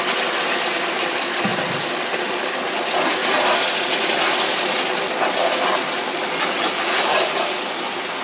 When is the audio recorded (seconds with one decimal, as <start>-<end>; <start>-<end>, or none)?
0.0-8.2